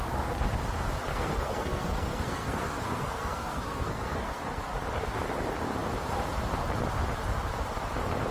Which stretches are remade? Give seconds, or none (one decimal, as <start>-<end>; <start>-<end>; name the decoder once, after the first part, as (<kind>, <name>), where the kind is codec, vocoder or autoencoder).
1.1-4.6 (codec, SNAC)